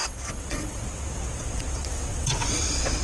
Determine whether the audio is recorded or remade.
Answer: remade